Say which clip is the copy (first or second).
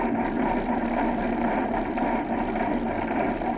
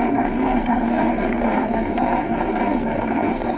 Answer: second